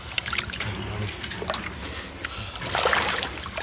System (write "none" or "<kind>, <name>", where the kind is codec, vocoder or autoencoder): none